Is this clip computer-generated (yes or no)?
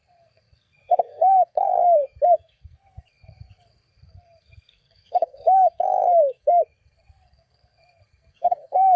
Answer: yes